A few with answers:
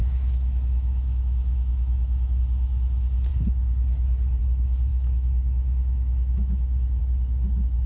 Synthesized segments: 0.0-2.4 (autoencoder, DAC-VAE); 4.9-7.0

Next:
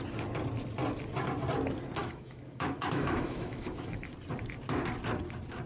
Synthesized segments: 2.0-4.0 (autoencoder, DAC-VAE)

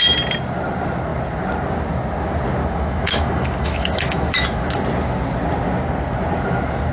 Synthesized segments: 2.6-4.8 (autoencoder, DAC-VAE)

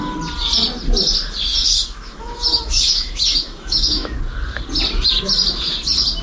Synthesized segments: 1.5-4.2 (autoencoder, DAC-VAE)

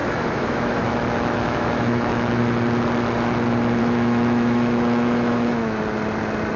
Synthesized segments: 0.0-2.4 (autoencoder, DAC-VAE); 3.8-5.8

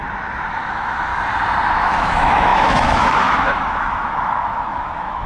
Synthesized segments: 0.5-1.1 (autoencoder, DAC-VAE); 1.7-5.3